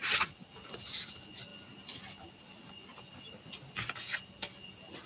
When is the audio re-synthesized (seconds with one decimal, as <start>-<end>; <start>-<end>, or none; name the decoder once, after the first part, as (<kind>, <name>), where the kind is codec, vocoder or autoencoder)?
none